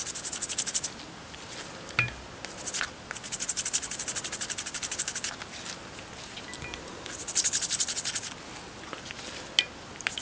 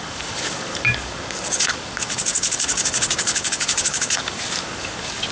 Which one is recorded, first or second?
first